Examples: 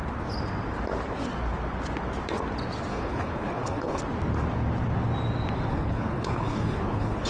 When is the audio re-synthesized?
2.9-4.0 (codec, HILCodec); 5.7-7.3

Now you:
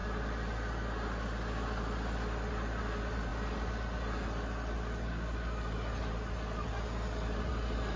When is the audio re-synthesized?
none

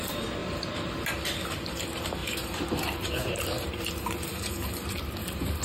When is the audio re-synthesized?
0.4-1.1 (vocoder, BigVGAN v2); 2.2-5.6

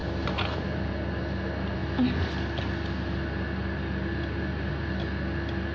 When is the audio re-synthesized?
0.0-0.9 (vocoder, BigVGAN v2)